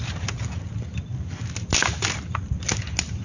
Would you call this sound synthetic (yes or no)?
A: no